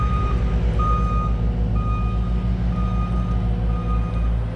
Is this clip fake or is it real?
real